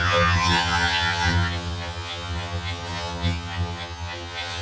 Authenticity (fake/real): fake